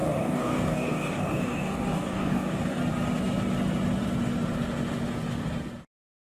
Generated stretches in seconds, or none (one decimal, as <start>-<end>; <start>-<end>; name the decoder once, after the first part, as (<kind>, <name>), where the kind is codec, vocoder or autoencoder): 0.0-2.8 (codec, DAC); 6.0-6.4